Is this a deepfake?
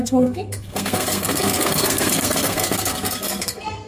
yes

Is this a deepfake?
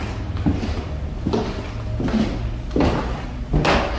no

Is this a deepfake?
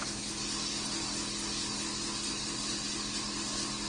no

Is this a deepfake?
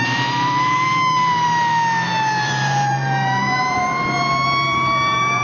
yes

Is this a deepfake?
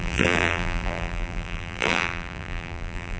yes